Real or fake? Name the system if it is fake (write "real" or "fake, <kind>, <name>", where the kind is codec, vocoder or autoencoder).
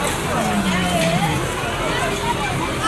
real